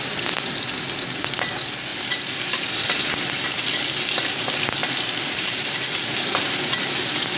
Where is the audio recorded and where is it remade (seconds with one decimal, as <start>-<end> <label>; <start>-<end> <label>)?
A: 0.0-7.4 recorded